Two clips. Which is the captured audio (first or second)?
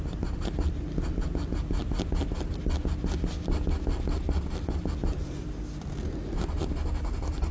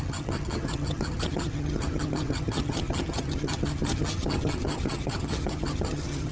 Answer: first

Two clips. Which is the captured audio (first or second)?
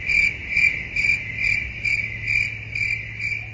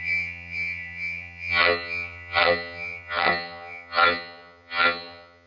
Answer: first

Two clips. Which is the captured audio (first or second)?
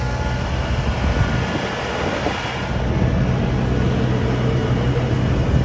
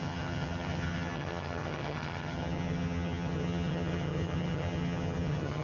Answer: first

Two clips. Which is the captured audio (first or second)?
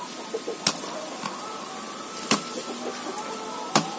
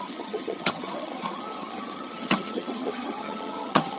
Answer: first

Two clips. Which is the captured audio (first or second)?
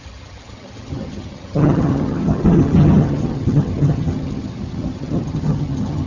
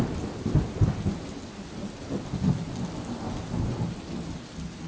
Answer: second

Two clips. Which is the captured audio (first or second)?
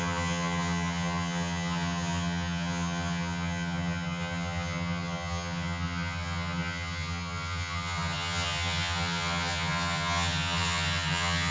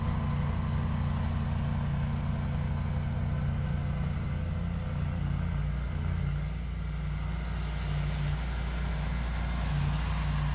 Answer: second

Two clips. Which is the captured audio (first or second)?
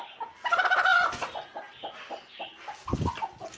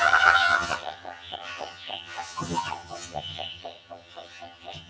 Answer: first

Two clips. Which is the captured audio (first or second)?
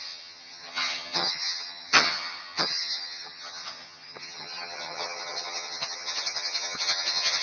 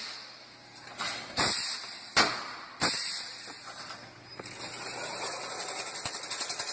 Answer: second